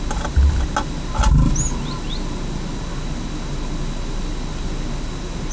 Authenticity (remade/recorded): recorded